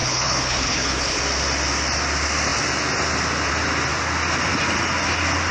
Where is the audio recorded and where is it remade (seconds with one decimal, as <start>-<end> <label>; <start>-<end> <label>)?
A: 0.0-1.2 remade; 1.2-5.5 recorded